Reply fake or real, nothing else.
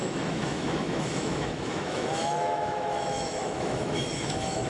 fake